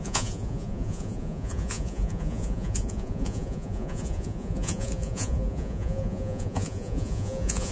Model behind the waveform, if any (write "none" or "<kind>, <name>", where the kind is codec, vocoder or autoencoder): vocoder, Vocos